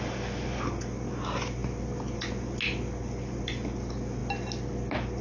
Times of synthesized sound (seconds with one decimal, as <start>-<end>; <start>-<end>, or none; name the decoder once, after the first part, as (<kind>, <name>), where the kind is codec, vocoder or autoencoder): none